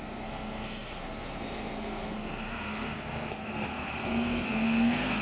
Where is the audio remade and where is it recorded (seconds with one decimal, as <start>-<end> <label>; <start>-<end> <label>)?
0.0-5.2 remade